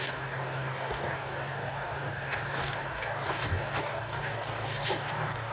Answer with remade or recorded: remade